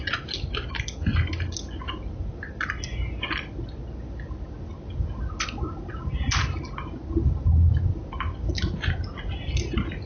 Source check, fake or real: real